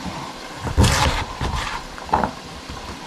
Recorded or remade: remade